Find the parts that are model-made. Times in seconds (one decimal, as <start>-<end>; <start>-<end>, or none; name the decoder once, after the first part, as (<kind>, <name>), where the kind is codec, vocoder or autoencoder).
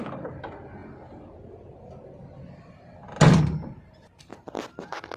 none